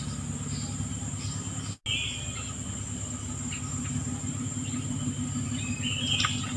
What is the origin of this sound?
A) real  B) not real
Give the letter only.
A